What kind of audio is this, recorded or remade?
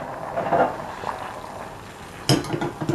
recorded